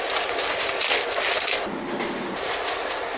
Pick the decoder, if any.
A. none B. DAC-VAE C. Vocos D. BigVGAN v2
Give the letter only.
A